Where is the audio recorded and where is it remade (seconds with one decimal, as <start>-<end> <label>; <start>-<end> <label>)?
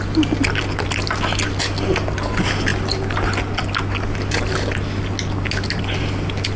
0.0-6.6 recorded